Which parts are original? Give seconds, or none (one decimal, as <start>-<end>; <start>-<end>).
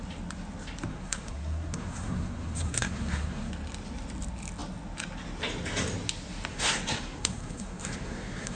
0.0-0.9; 3.5-6.5